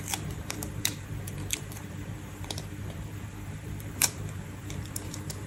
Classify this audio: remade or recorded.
remade